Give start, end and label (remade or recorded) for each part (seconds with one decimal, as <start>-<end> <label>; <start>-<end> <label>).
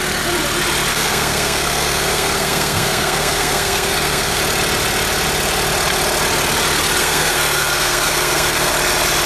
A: 0.0-0.9 recorded; 0.9-4.4 remade; 4.4-7.0 recorded; 7.0-8.7 remade; 8.7-9.3 recorded